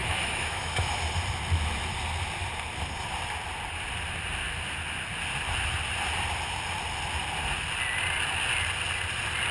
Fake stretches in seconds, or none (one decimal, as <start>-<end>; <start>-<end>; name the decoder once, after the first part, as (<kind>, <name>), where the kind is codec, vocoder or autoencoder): 0.0-1.0 (autoencoder, DAC-VAE)